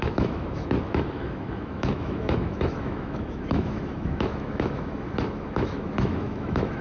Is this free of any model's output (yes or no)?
no